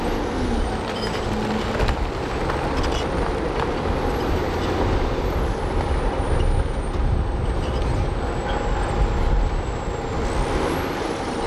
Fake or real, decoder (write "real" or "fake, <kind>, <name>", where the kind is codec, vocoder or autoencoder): real